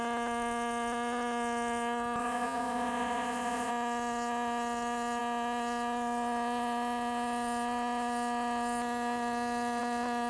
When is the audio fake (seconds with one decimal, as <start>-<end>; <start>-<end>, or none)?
2.2-3.7